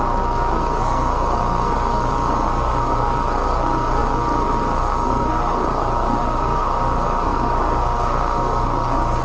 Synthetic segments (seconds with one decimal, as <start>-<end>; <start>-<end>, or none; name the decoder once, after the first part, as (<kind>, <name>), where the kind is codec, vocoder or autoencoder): 0.0-9.2 (codec, SNAC)